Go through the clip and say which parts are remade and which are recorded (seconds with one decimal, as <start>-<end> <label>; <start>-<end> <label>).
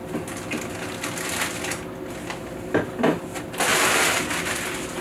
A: 0.0-3.7 recorded; 3.7-4.3 remade; 4.3-5.0 recorded